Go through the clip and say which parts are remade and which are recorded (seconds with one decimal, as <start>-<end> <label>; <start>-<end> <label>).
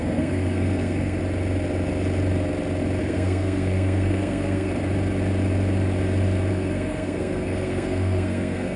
0.0-1.2 remade; 1.2-3.0 recorded; 3.0-4.7 remade; 4.7-6.5 recorded; 6.5-8.8 remade